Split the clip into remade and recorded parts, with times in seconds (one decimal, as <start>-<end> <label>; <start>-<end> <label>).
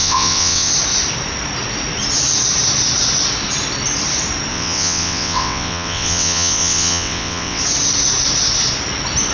0.0-0.7 remade; 0.7-4.5 recorded; 4.5-7.6 remade; 7.6-9.3 recorded